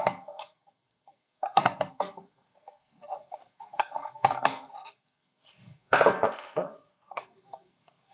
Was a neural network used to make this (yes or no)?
yes